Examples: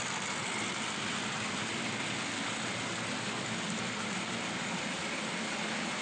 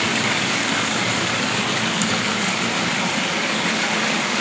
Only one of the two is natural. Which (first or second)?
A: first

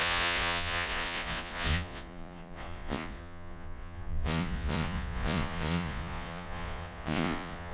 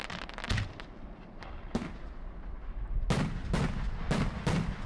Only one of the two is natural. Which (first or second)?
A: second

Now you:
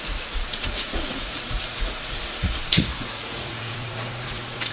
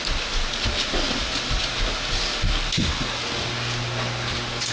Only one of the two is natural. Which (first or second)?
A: second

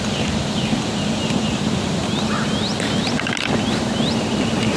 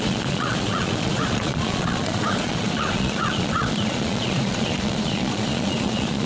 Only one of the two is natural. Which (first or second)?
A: first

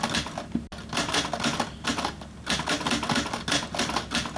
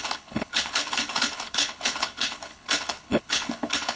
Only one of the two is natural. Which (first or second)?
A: first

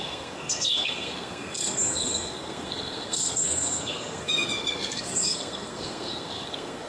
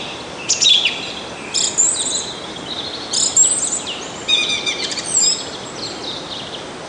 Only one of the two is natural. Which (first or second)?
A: second